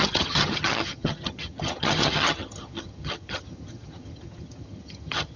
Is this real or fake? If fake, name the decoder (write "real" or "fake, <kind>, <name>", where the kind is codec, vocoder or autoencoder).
fake, vocoder, HiFi-GAN